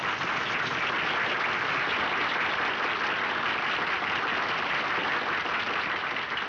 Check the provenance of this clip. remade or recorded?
recorded